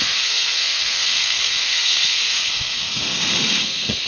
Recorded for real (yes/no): no